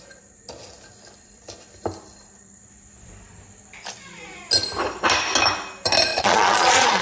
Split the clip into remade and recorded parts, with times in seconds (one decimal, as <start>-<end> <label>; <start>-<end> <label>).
0.0-6.1 recorded; 6.1-7.0 remade